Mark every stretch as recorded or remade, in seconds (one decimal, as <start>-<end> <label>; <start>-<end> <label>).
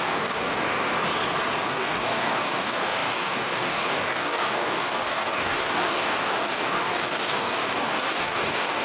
0.0-0.9 remade; 0.9-1.6 recorded; 1.6-8.8 remade